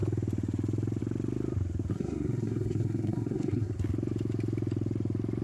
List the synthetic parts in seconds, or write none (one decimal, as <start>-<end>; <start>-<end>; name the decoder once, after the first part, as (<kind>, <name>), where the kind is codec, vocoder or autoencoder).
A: 1.9-3.7 (codec, SNAC)